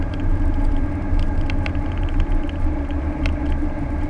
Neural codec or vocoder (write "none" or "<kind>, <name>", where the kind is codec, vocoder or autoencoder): vocoder, BigVGAN v2